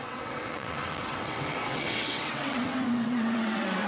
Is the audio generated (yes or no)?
yes